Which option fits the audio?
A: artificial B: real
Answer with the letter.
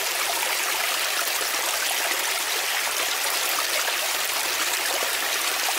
B